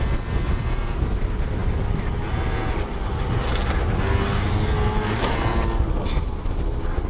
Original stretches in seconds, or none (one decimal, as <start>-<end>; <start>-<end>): 0.0-7.1